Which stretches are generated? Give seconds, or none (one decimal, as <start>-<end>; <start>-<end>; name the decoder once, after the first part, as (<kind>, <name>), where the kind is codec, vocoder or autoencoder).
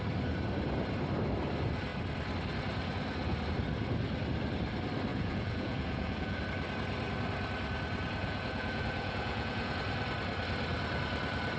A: 5.1-6.4 (vocoder, Vocos); 8.2-9.8